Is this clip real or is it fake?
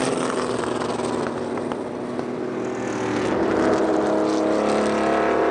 real